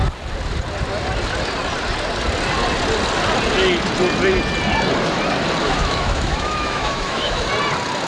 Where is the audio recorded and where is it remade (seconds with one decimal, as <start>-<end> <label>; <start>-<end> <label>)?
0.0-5.6 recorded; 5.6-7.5 remade; 7.5-8.1 recorded

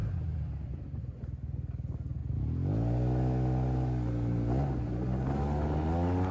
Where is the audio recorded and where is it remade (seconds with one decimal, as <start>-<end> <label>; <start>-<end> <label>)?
0.0-6.3 recorded

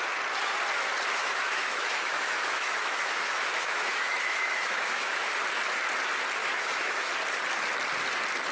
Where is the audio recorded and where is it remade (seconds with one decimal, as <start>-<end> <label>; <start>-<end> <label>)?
0.0-1.2 recorded; 1.2-5.3 remade; 5.3-6.4 recorded; 6.4-7.1 remade; 7.1-8.5 recorded

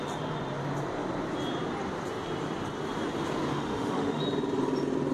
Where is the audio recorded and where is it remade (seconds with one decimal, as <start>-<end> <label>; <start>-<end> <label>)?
0.0-3.5 recorded; 3.5-4.2 remade; 4.2-5.1 recorded

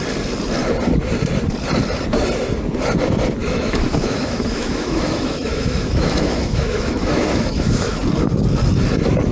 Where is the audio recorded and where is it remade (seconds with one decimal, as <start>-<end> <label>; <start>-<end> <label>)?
0.0-3.4 recorded; 3.4-8.0 remade; 8.0-9.3 recorded